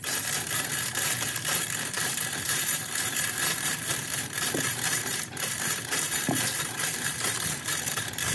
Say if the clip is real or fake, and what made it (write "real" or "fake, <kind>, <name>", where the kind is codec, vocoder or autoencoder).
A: fake, vocoder, BigVGAN v2